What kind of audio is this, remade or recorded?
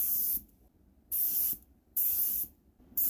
remade